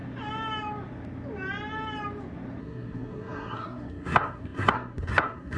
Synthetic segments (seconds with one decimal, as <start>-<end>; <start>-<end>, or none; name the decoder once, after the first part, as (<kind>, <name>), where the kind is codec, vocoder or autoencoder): 2.6-5.6 (codec, SNAC)